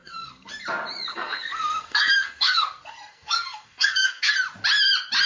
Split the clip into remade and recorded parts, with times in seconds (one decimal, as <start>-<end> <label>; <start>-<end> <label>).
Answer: 0.0-0.5 remade; 0.5-1.1 recorded; 1.1-4.3 remade; 4.3-5.3 recorded